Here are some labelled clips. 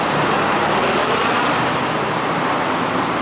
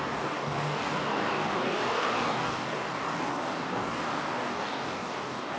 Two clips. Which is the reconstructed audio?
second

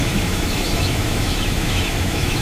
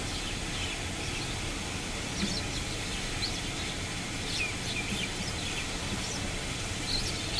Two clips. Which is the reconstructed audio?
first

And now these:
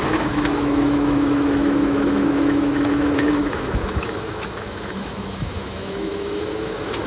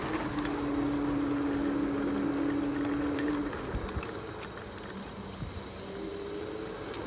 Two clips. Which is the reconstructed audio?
first